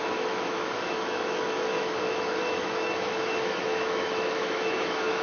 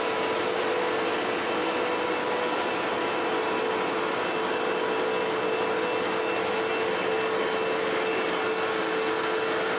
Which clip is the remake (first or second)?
first